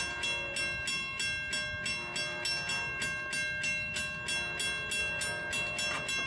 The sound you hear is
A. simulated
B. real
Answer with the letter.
B